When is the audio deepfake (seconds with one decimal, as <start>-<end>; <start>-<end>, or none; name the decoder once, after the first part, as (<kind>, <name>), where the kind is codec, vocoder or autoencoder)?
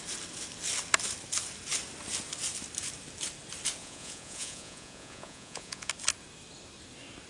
3.8-5.9 (vocoder, Vocos)